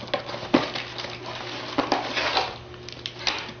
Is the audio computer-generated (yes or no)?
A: no